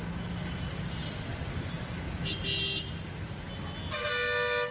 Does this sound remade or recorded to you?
recorded